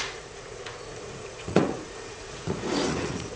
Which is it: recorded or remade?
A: remade